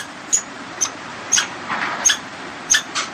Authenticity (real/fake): fake